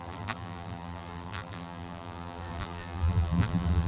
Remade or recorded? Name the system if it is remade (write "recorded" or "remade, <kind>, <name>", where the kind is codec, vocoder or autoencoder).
remade, vocoder, BigVGAN v2